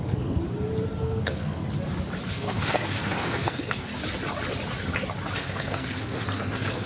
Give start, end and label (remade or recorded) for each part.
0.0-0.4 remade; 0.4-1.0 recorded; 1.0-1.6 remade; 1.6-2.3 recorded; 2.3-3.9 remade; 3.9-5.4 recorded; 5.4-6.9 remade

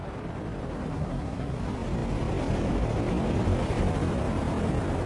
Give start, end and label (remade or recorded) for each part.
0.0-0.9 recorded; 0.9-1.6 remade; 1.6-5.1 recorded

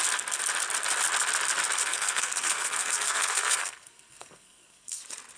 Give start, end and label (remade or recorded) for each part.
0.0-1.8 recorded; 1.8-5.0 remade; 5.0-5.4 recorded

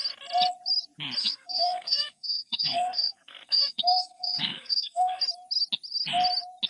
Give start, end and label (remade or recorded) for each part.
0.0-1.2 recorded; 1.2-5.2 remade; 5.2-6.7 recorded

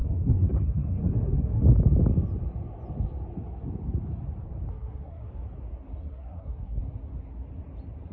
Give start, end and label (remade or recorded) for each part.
0.0-1.6 remade; 1.6-4.7 recorded; 4.7-5.3 remade; 5.3-6.0 recorded; 6.0-6.8 remade; 6.8-8.1 recorded